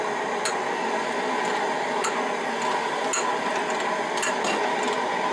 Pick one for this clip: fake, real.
real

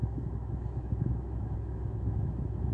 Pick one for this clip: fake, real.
fake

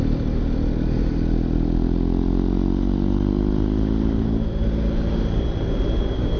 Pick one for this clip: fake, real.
real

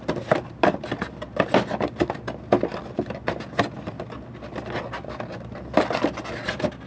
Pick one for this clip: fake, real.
real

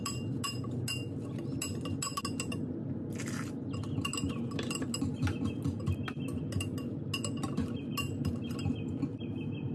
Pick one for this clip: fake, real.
real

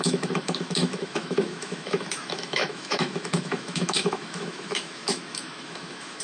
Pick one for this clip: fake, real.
fake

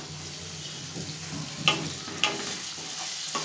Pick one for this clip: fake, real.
real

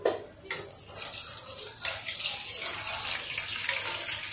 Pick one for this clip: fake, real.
real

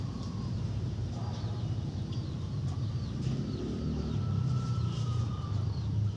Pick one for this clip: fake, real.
fake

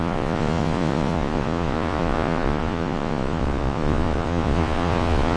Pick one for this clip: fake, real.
fake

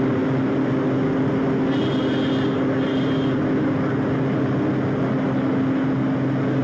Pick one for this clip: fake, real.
real